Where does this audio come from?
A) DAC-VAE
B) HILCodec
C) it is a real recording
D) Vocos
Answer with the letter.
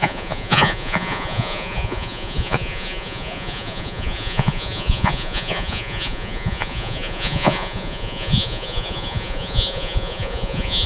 D